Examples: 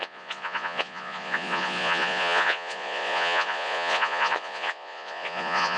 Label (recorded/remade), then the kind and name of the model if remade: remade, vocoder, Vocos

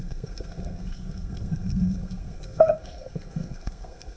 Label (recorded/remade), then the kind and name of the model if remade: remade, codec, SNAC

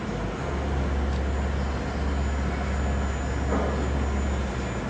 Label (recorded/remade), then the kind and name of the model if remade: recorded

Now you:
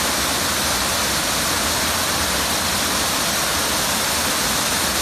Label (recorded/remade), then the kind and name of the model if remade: recorded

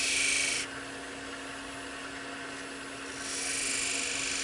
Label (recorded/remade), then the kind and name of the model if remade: recorded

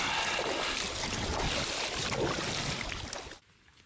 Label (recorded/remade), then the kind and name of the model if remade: recorded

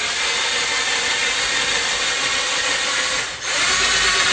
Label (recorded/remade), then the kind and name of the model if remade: recorded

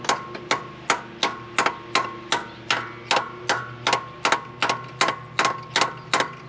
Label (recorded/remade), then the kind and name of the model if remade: recorded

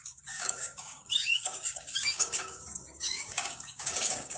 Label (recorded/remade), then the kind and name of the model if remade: remade, codec, DAC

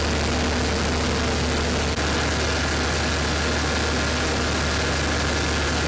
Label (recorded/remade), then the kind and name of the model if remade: recorded